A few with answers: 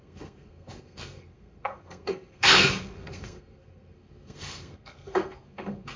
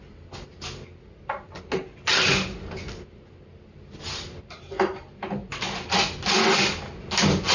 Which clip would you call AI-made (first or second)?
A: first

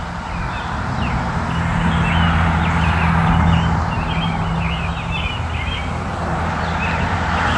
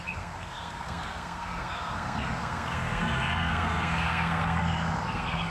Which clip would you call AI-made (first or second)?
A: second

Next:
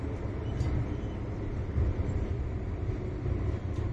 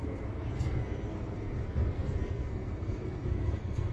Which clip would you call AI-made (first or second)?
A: second